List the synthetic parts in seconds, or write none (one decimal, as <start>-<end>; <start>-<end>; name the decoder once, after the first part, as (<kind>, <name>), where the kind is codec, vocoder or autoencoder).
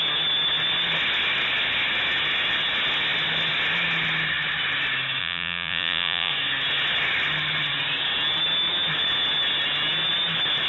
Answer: 5.2-6.3 (vocoder, Vocos)